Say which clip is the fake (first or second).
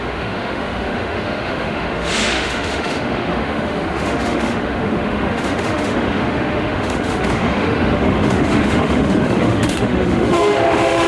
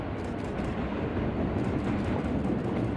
first